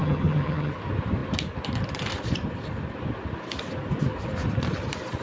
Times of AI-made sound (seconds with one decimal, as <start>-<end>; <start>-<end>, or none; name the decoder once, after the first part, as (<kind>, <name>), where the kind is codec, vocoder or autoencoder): 0.0-0.7 (vocoder, HiFi-GAN)